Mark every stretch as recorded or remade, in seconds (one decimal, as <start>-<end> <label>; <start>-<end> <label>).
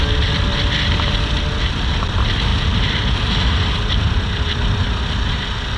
0.0-5.8 recorded